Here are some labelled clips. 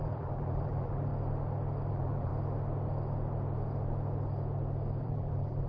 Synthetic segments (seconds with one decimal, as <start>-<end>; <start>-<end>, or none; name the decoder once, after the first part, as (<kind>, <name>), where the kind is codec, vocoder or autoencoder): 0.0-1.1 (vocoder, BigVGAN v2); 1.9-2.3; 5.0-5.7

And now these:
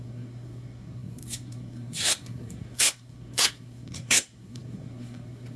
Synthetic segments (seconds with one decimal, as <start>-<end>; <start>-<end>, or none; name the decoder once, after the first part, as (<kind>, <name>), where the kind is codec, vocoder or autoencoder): 0.0-5.6 (codec, SNAC)

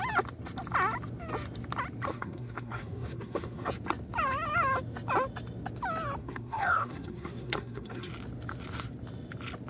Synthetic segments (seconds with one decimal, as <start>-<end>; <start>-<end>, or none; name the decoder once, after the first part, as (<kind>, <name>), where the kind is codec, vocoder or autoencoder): 2.1-3.7 (codec, SNAC); 6.2-8.1

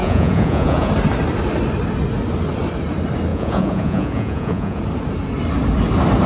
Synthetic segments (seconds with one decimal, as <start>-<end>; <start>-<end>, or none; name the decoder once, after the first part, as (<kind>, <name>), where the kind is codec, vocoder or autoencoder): 0.0-0.9 (vocoder, Vocos); 3.3-4.8

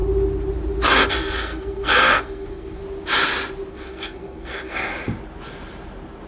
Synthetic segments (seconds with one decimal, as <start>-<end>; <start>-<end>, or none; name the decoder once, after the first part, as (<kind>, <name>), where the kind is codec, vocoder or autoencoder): 1.1-2.8 (codec, SNAC); 3.7-4.9

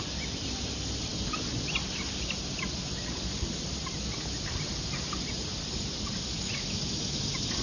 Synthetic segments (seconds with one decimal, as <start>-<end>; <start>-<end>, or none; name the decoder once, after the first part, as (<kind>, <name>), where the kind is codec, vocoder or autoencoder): none